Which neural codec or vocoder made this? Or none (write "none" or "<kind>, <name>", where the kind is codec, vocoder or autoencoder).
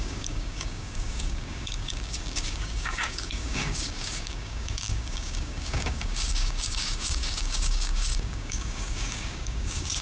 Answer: codec, DAC